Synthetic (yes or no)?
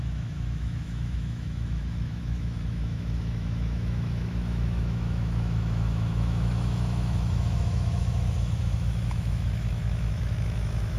yes